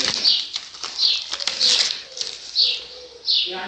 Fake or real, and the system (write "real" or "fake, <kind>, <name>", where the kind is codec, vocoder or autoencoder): real